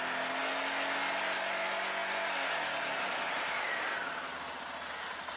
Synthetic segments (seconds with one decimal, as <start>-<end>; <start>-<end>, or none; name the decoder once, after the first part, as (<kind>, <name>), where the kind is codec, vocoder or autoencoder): none